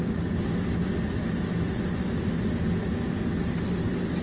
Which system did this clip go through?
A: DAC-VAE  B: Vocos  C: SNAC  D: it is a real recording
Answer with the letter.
D